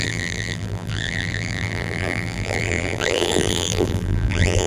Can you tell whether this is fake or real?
fake